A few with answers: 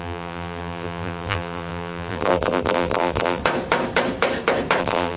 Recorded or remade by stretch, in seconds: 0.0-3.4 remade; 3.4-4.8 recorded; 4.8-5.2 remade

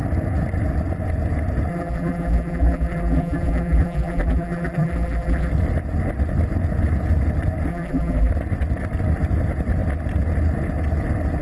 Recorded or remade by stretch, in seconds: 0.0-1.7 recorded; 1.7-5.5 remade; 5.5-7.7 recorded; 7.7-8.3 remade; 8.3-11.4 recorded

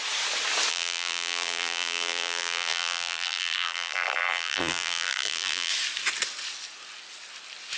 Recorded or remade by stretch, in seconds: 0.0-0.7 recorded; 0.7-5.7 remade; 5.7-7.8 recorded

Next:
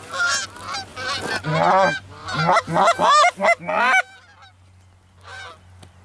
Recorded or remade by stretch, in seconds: 0.0-6.0 recorded

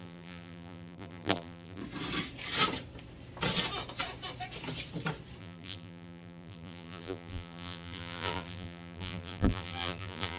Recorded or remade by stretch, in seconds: 0.0-1.8 remade; 1.8-5.4 recorded; 5.4-10.4 remade

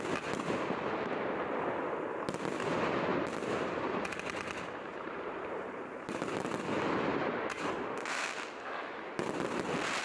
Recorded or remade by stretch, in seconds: 0.0-3.1 recorded; 3.1-3.6 remade; 3.6-4.9 recorded; 4.9-6.1 remade; 6.1-7.1 recorded; 7.1-7.7 remade; 7.7-10.0 recorded